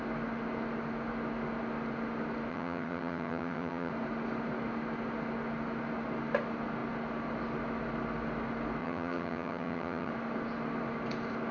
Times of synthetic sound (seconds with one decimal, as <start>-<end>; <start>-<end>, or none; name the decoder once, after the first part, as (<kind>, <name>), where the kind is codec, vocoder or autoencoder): 2.5-3.9 (vocoder, HiFi-GAN); 8.8-10.1